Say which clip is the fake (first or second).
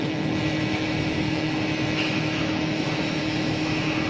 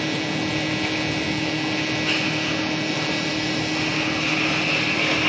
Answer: first